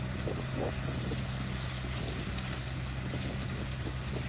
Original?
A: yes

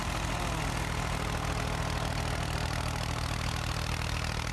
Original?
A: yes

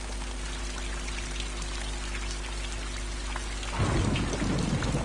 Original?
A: yes